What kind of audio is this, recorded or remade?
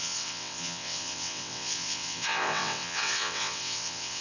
remade